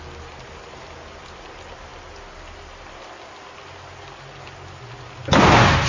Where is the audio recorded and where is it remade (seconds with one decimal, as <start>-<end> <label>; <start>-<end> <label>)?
0.0-5.9 recorded